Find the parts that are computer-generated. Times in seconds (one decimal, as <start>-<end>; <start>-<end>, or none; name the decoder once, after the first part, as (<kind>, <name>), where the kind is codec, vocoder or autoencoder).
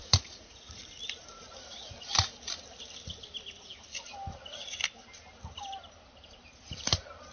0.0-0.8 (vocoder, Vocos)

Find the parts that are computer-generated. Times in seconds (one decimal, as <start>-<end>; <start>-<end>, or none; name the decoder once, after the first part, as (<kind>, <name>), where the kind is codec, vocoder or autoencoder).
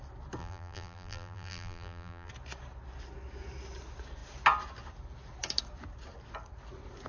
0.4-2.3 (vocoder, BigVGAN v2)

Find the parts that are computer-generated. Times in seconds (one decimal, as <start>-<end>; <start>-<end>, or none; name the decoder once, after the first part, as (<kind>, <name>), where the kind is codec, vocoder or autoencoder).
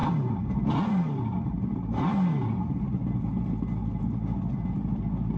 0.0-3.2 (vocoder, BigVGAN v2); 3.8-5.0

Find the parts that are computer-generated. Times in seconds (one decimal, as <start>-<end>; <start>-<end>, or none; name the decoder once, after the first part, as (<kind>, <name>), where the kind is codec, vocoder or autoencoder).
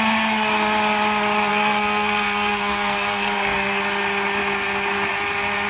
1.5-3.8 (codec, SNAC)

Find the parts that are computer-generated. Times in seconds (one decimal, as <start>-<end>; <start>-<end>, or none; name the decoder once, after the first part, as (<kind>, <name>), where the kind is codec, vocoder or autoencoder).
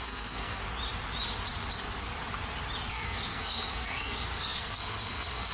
0.0-0.6 (codec, SNAC); 2.9-5.5